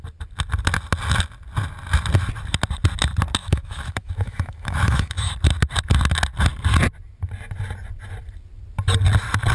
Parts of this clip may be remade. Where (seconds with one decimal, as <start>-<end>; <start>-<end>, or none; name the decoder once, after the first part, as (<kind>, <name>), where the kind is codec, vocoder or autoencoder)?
3.4-5.3 (autoencoder, DAC-VAE)